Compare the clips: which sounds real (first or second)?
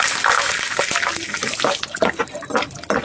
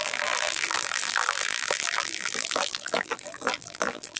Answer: first